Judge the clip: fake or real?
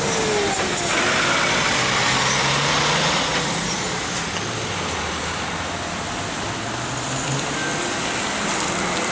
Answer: real